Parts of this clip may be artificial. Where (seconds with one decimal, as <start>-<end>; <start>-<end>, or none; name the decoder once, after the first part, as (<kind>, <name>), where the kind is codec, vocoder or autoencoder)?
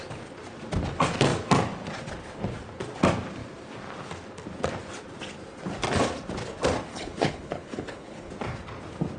6.9-8.3 (codec, HILCodec)